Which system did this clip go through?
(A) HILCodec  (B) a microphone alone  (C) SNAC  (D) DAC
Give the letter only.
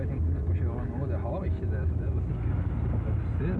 B